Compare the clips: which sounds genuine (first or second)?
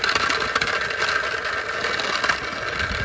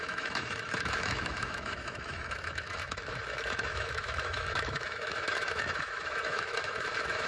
first